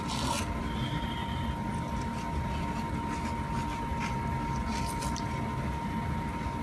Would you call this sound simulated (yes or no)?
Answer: no